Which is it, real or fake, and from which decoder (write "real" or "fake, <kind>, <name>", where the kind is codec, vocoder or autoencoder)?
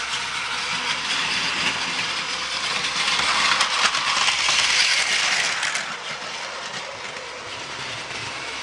fake, vocoder, BigVGAN v2